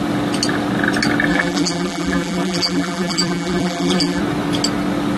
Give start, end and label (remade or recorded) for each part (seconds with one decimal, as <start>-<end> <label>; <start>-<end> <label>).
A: 0.0-1.3 recorded; 1.3-4.2 remade; 4.2-5.2 recorded